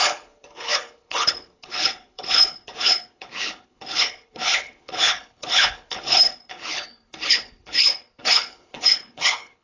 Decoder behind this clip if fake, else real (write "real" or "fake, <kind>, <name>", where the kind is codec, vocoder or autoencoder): fake, codec, HILCodec